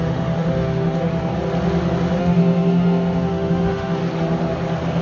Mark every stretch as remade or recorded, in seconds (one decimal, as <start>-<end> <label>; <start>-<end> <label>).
0.0-1.3 remade; 1.3-2.2 recorded; 2.2-4.0 remade; 4.0-5.0 recorded